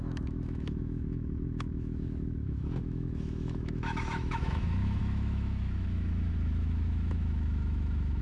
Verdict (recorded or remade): remade